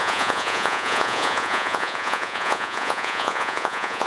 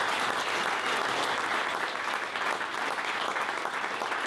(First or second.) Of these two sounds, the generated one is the first